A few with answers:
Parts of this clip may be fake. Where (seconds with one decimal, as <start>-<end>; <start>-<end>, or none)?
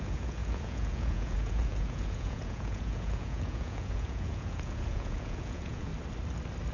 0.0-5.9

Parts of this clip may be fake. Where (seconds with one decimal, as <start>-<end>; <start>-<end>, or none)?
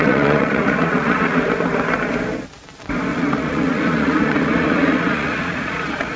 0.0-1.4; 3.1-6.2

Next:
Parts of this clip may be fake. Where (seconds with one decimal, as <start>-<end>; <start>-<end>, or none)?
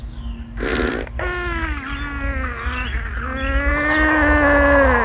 none